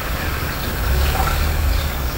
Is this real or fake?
fake